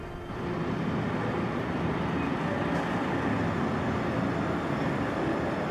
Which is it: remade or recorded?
recorded